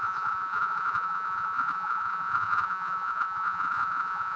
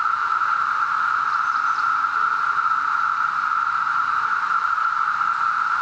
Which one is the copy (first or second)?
first